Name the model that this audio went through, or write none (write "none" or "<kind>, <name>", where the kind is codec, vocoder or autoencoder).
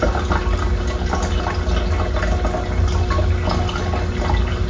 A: none